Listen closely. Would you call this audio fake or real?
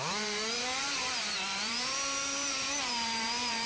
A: fake